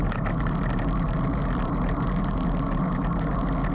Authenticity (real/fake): real